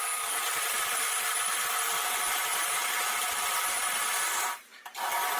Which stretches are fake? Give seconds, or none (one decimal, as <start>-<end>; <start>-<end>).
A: 0.4-3.6